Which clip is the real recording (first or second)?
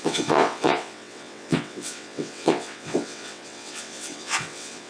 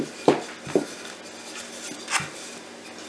second